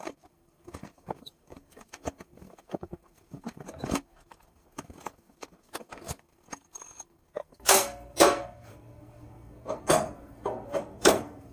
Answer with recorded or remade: remade